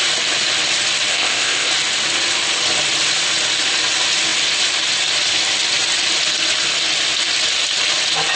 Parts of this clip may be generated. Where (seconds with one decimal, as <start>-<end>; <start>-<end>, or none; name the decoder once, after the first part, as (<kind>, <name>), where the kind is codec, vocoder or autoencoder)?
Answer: 1.1-1.7 (codec, ZipCodec)